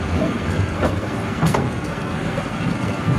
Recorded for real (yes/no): no